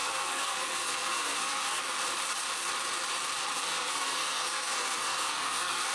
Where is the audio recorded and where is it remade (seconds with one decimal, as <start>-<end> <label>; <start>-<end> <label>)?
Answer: 0.0-1.8 remade; 1.8-3.6 recorded; 3.6-5.9 remade